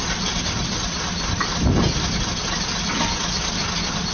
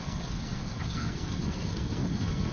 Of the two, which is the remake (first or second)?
second